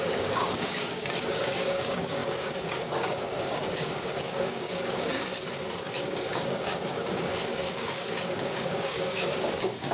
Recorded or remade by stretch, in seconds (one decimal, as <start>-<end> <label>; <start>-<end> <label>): 0.0-5.3 remade; 5.3-5.8 recorded; 5.8-9.9 remade